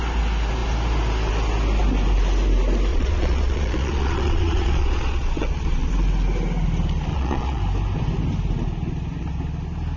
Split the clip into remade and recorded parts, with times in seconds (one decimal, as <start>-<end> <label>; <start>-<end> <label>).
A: 0.0-2.9 recorded; 2.9-5.9 remade; 5.9-7.1 recorded; 7.1-7.6 remade; 7.6-10.0 recorded